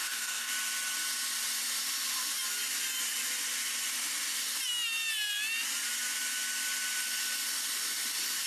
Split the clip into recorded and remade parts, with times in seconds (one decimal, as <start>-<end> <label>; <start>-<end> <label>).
0.0-0.5 remade; 0.5-8.5 recorded